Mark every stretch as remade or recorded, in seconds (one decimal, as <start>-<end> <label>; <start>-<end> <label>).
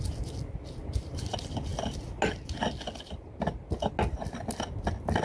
0.0-5.2 recorded